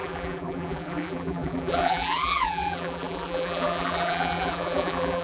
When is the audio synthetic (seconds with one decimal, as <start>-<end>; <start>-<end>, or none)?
0.0-5.2

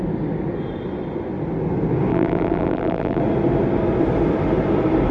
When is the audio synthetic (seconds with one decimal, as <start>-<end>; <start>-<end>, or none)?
2.1-3.2

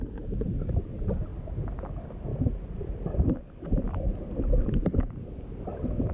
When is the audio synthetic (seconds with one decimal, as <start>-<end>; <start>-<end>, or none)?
2.3-4.8